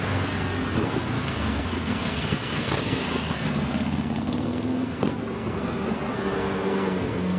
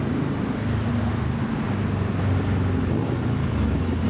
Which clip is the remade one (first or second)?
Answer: first